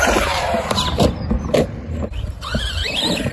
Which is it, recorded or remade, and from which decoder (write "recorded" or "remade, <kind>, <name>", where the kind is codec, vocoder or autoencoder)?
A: remade, vocoder, BigVGAN v2